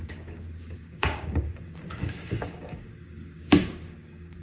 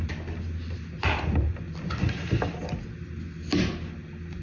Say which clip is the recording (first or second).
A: second